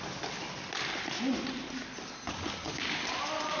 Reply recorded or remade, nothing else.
recorded